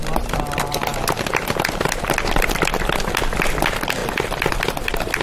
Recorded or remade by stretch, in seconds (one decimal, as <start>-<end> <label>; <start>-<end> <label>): 0.0-5.2 recorded